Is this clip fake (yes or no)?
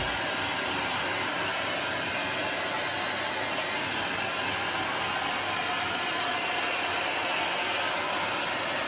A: no